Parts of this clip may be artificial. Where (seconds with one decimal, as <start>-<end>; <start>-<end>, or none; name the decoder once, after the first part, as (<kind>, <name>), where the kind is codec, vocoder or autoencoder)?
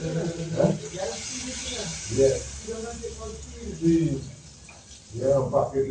none